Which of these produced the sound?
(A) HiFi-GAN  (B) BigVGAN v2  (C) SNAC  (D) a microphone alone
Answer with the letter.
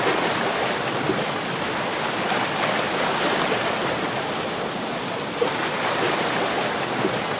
D